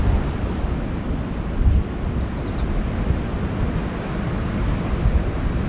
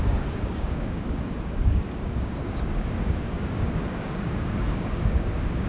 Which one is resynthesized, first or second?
second